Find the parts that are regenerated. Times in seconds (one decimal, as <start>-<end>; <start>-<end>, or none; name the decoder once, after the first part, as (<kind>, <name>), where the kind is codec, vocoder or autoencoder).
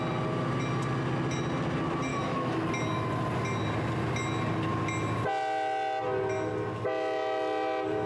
2.1-2.7 (autoencoder, DAC-VAE)